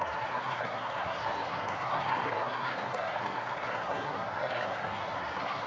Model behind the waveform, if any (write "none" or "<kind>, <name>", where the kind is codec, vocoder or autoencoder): codec, SNAC